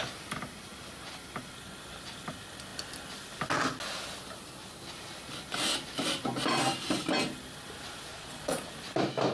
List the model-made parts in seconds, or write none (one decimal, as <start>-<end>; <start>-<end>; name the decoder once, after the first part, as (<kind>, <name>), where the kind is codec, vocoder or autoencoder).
8.1-8.7 (vocoder, Vocos)